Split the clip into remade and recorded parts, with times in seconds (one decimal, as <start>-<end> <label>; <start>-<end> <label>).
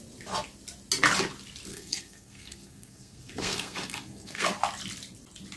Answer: 0.0-1.7 recorded; 1.7-4.6 remade; 4.6-5.6 recorded